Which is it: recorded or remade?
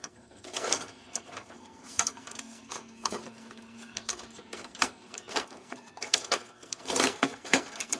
remade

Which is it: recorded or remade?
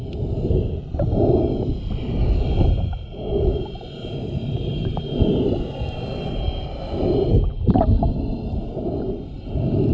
recorded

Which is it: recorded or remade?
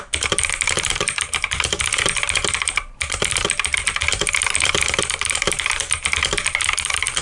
remade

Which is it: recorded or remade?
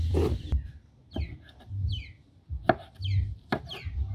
remade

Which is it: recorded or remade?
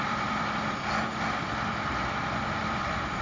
remade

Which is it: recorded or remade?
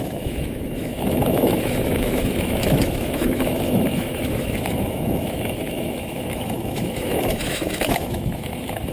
remade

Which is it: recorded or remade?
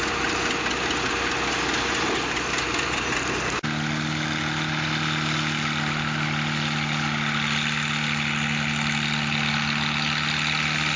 recorded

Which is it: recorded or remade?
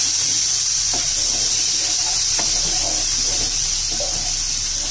recorded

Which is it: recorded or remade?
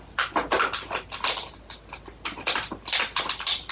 recorded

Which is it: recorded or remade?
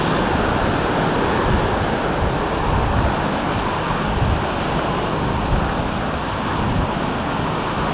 recorded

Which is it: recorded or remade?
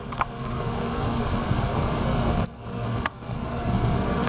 remade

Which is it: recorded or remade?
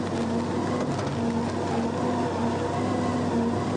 recorded